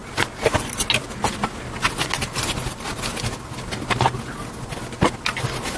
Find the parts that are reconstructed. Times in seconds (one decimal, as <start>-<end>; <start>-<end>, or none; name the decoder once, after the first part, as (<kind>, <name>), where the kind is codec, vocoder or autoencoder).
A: none